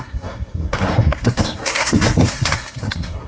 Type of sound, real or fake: fake